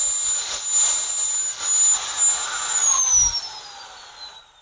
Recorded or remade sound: recorded